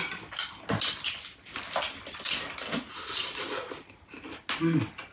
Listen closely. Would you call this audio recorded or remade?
recorded